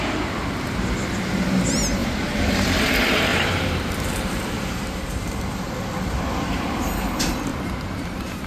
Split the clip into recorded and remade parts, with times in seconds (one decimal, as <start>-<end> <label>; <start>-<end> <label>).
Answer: 0.0-2.0 recorded; 2.0-2.5 remade; 2.5-3.3 recorded; 3.3-5.4 remade; 5.4-7.5 recorded; 7.5-8.5 remade